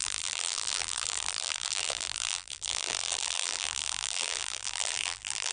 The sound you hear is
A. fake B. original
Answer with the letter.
A